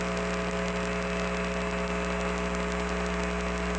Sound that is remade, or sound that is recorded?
recorded